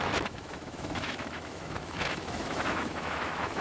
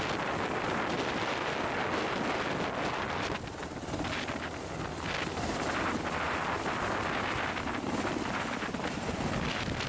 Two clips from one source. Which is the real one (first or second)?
second